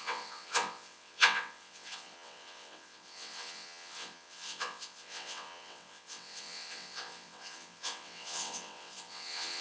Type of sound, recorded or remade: remade